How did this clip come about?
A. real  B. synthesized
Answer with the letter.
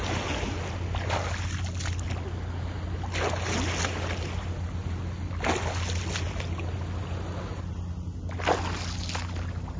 A